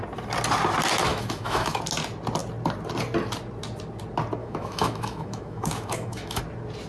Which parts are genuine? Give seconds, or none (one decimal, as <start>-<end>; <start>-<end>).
0.0-1.1; 1.8-4.4; 6.4-6.9